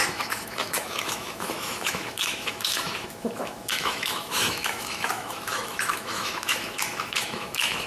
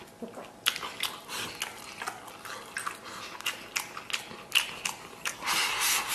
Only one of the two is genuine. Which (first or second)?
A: second